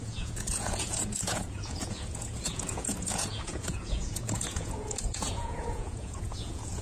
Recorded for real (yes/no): no